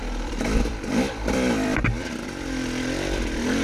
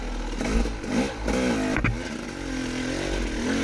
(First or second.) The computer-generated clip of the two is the first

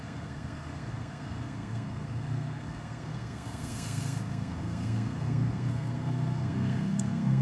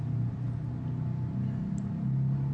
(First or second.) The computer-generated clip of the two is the first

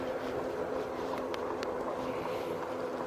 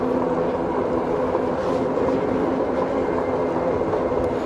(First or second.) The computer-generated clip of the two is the first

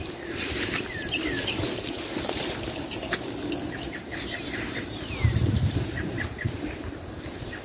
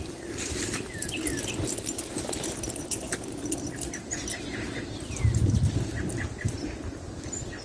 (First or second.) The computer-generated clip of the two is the first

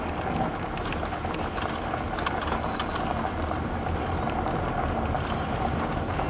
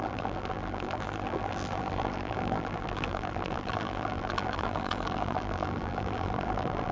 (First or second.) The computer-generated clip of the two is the second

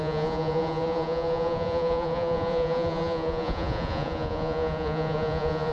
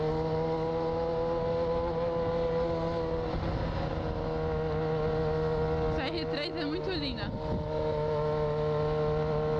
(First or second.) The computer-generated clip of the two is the first